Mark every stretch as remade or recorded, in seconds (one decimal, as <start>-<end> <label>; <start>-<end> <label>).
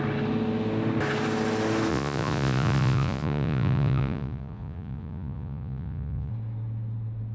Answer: 0.0-1.9 recorded; 1.9-6.3 remade; 6.3-7.3 recorded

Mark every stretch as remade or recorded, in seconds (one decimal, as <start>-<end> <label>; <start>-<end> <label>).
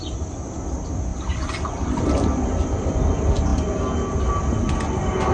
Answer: 0.0-5.3 recorded